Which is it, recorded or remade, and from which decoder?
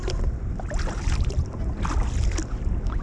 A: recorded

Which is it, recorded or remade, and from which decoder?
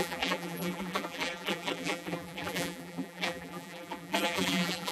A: remade, vocoder, BigVGAN v2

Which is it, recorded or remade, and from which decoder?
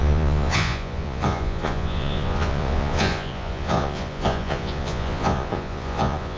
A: remade, vocoder, Vocos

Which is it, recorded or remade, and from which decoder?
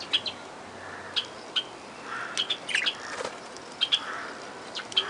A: recorded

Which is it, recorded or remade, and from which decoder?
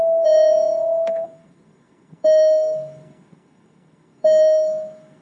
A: remade, codec, SNAC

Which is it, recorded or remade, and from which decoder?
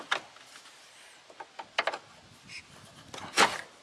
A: recorded